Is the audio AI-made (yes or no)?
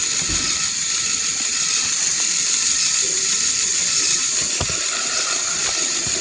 no